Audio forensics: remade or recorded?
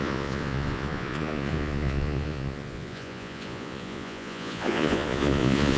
remade